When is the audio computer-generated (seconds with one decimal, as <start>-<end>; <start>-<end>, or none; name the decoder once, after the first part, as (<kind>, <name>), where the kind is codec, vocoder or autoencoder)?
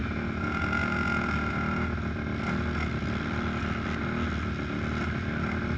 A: none